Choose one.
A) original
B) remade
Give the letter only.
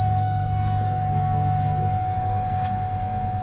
B